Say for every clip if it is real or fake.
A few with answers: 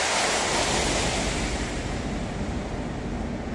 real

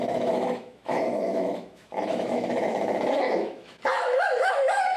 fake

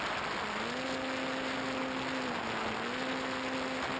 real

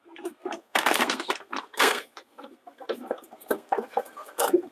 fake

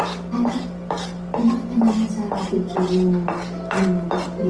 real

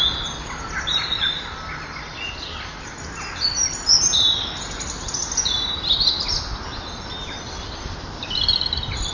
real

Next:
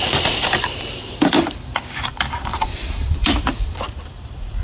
fake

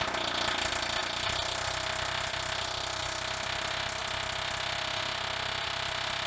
real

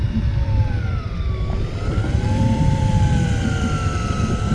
fake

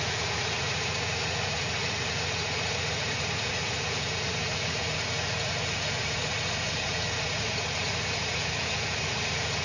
fake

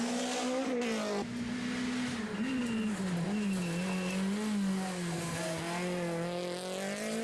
real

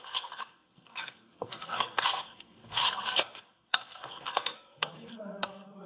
fake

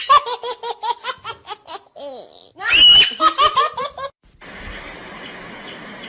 real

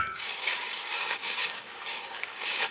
fake